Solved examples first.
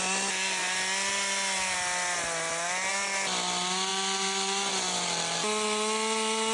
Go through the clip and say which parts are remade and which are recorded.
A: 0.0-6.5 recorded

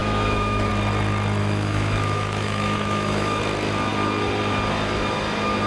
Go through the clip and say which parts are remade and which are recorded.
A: 0.0-0.7 remade; 0.7-1.4 recorded; 1.4-3.4 remade; 3.4-5.7 recorded

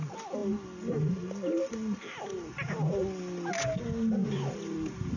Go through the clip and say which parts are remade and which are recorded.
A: 0.0-5.2 recorded

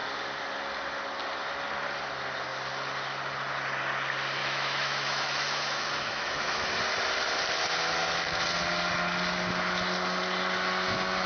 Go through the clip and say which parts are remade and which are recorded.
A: 0.0-4.4 recorded; 4.4-6.7 remade; 6.7-11.3 recorded

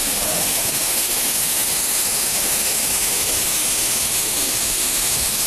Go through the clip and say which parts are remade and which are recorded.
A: 0.0-5.5 remade

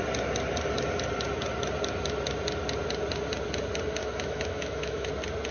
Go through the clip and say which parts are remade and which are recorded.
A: 0.0-4.0 recorded; 4.0-5.1 remade; 5.1-5.5 recorded

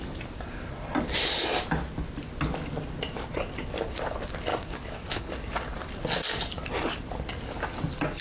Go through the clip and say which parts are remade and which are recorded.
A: 0.0-4.5 recorded; 4.5-5.2 remade; 5.2-8.2 recorded